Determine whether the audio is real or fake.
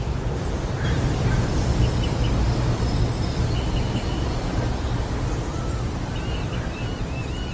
fake